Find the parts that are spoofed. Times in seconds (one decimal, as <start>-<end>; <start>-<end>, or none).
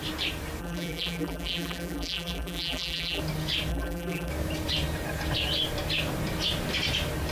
0.6-3.2; 3.7-4.3